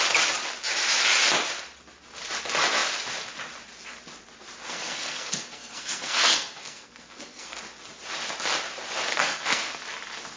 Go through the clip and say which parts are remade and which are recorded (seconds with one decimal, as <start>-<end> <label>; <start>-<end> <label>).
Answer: 0.0-4.6 recorded; 4.6-7.6 remade; 7.6-9.1 recorded; 9.1-9.8 remade; 9.8-10.4 recorded